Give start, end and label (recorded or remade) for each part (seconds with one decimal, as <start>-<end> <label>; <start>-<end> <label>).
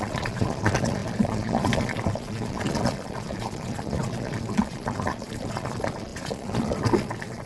0.0-7.5 remade